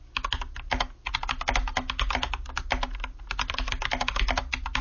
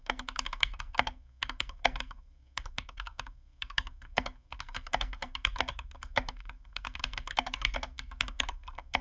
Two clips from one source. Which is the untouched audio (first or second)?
first